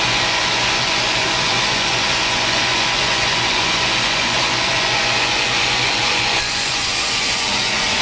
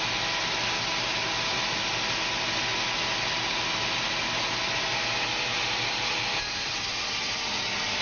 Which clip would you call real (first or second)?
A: second